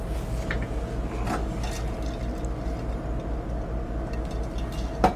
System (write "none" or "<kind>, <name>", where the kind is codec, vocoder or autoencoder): none